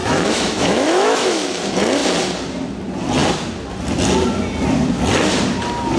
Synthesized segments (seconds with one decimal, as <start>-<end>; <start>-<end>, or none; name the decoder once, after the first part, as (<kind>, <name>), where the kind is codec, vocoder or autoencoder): 0.0-1.6 (autoencoder, DAC-VAE)